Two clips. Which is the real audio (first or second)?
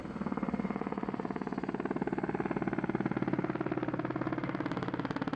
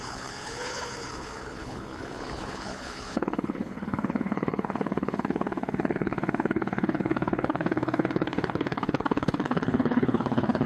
first